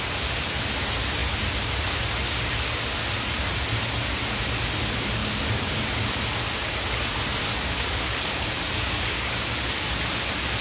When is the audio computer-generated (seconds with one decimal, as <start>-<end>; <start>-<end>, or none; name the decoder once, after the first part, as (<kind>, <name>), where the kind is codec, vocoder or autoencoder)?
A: 7.4-9.6 (codec, DAC)